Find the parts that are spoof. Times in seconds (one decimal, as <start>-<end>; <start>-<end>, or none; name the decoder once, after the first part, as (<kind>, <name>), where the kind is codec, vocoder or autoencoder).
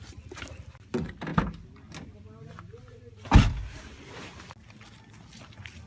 none